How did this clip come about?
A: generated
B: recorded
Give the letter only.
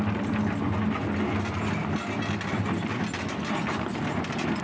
B